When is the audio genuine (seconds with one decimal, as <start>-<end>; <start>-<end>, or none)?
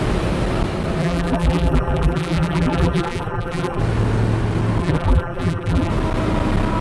0.0-1.0; 3.8-4.8; 5.9-6.8